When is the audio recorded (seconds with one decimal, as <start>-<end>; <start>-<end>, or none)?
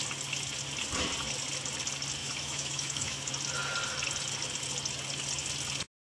0.0-2.2; 3.3-6.1